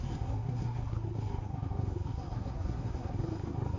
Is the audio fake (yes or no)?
yes